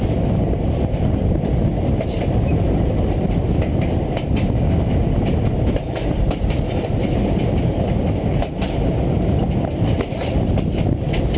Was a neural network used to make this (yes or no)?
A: no